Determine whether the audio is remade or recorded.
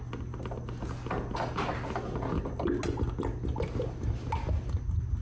recorded